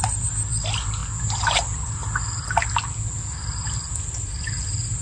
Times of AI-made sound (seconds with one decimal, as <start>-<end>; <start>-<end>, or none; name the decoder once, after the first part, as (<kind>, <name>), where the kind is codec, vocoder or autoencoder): 0.0-1.0 (vocoder, BigVGAN v2); 4.0-5.0